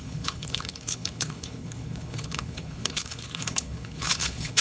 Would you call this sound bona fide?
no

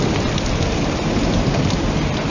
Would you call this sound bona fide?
yes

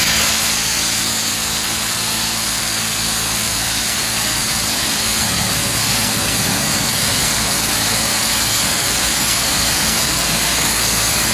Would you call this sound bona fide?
no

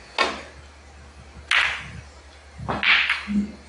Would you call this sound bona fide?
yes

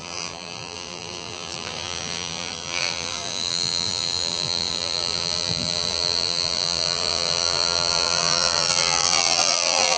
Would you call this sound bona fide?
no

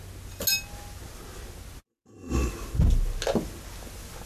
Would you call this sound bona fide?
yes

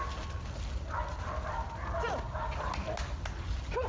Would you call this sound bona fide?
yes